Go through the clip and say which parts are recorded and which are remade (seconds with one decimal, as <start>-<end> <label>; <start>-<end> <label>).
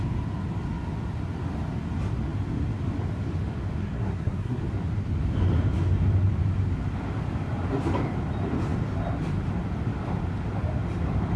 0.0-3.8 recorded; 3.8-4.6 remade; 4.6-11.4 recorded